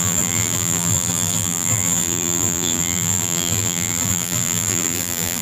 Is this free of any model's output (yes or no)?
no